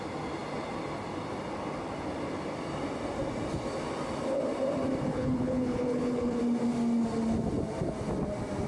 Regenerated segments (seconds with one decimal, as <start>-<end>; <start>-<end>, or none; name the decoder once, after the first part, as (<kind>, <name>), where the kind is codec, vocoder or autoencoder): 5.1-6.4 (codec, HILCodec)